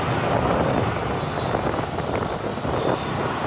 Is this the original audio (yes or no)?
yes